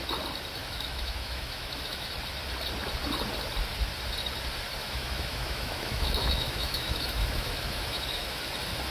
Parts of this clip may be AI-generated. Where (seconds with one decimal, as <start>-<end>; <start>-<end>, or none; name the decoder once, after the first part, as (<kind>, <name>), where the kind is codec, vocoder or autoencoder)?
0.6-2.1 (autoencoder, DAC-VAE); 4.8-8.4